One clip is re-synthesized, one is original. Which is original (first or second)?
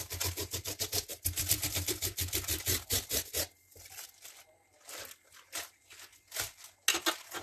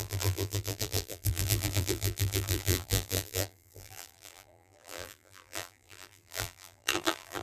first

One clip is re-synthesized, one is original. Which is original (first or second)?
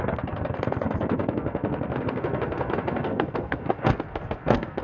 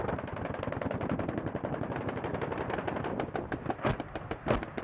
second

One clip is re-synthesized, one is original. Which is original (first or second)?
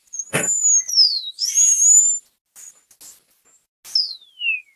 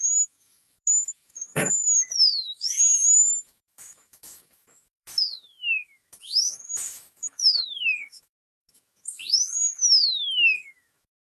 first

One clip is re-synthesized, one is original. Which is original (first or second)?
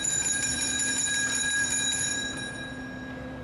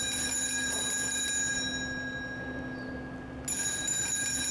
second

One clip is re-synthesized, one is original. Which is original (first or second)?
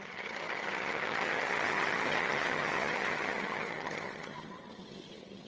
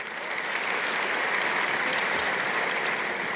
second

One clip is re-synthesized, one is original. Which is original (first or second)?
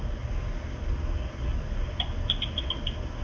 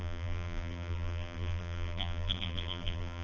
first